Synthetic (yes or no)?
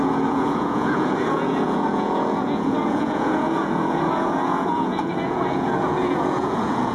yes